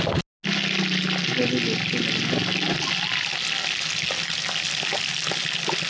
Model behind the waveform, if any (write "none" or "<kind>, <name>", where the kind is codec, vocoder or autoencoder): none